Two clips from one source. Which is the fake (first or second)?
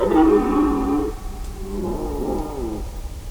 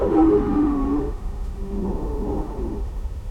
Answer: second